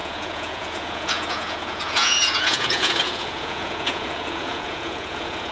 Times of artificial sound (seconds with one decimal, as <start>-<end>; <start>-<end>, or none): 0.0-5.5